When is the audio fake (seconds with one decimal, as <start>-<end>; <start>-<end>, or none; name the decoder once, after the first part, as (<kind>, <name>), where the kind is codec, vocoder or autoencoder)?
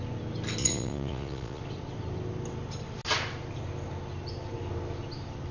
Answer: 0.6-1.6 (vocoder, Vocos)